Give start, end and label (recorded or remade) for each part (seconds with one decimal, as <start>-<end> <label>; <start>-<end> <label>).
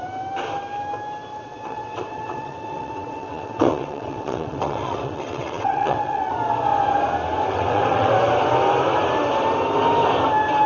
0.0-1.3 recorded; 1.3-6.3 remade; 6.3-7.5 recorded; 7.5-8.1 remade; 8.1-10.7 recorded